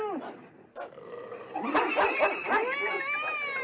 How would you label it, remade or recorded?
recorded